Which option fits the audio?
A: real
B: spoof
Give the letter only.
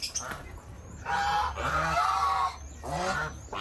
A